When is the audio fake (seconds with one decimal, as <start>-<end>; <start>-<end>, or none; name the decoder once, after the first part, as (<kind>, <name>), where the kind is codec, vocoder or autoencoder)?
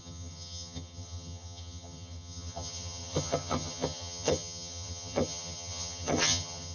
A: 0.0-6.7 (vocoder, HiFi-GAN)